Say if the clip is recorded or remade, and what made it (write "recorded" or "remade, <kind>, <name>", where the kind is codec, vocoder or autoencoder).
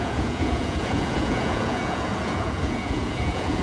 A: remade, vocoder, Vocos